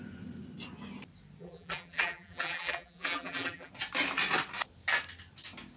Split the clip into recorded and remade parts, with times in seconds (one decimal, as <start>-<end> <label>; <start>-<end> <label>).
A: 0.0-1.4 recorded; 1.4-3.7 remade; 3.7-5.8 recorded